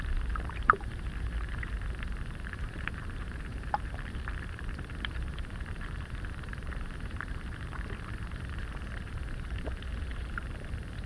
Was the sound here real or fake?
fake